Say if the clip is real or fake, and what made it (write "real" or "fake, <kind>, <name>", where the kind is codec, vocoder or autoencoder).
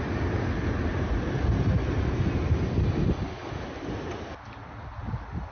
real